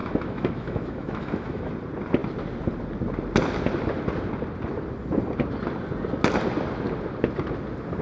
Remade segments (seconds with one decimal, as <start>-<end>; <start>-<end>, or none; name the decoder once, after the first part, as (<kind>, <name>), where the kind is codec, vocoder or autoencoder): 0.0-1.7 (autoencoder, DAC-VAE)